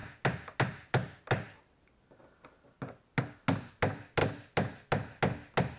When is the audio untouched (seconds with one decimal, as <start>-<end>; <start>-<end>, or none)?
0.0-5.8